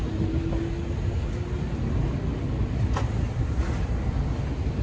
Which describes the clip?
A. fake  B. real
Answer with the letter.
B